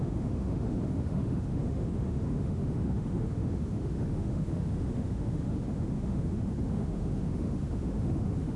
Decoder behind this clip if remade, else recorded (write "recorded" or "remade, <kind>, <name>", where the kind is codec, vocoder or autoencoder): remade, autoencoder, DAC-VAE